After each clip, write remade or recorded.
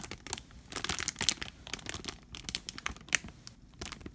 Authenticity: recorded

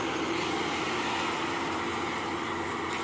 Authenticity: recorded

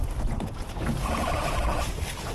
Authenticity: recorded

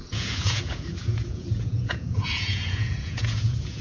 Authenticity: remade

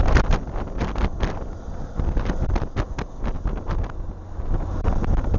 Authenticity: recorded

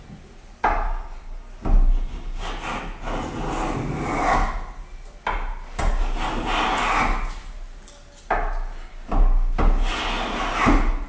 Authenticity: recorded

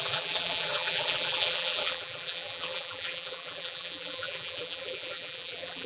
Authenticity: remade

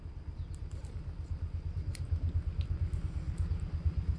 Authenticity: recorded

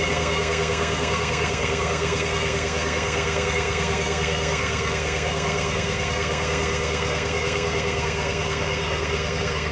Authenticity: remade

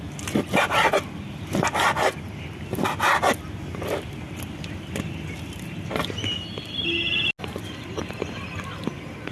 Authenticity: recorded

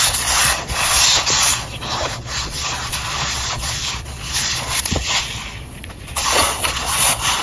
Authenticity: remade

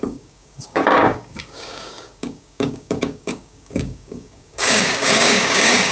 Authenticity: remade